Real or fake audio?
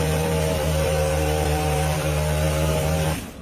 fake